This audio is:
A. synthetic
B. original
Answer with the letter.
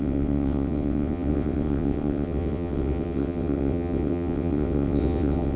A